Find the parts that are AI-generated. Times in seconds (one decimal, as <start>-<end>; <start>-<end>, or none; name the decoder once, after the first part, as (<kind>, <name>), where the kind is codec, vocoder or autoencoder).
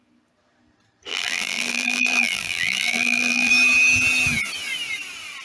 1.1-3.5 (vocoder, BigVGAN v2)